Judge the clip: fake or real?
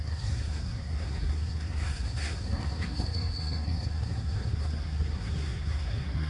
fake